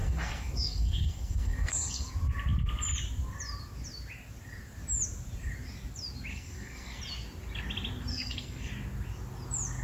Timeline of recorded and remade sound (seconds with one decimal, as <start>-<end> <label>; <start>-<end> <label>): 0.0-2.1 remade; 2.1-6.3 recorded; 6.3-7.0 remade; 7.0-8.1 recorded; 8.1-8.7 remade; 8.7-9.8 recorded